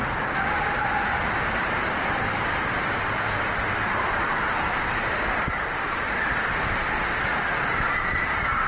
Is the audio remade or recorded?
recorded